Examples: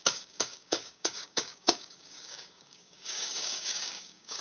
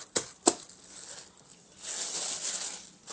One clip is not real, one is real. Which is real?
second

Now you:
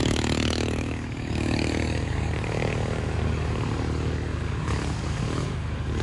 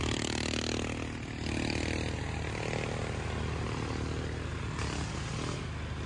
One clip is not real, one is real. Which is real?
second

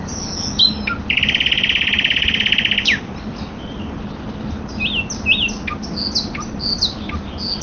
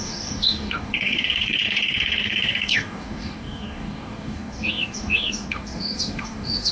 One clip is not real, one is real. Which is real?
first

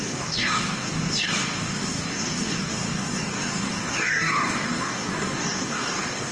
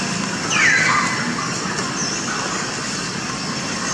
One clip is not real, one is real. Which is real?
second